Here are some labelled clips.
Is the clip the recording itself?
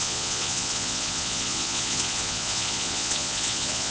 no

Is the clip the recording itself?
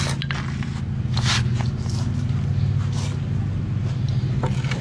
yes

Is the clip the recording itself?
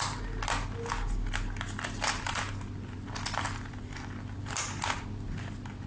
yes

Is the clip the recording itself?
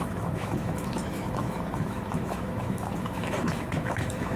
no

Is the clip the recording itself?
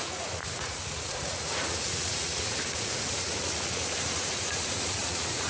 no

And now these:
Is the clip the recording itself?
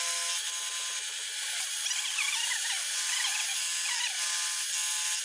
yes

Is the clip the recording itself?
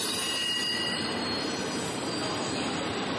yes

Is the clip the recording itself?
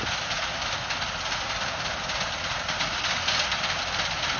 yes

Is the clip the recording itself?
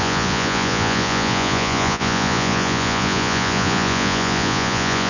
no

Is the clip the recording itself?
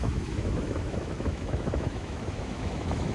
no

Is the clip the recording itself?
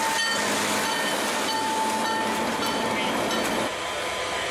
yes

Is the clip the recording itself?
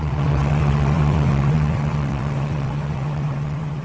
no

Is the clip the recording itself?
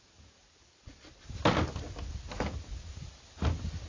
yes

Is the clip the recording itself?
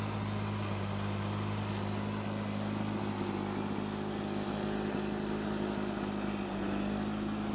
yes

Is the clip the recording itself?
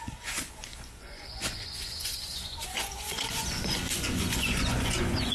no